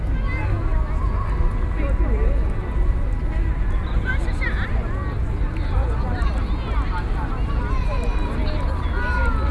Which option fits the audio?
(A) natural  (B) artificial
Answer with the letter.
A